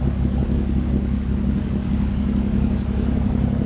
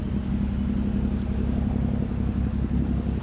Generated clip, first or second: first